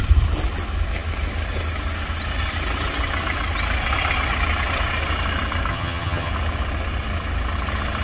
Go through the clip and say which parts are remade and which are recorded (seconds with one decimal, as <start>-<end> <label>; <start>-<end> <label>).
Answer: 0.0-5.7 recorded; 5.7-6.3 remade; 6.3-8.0 recorded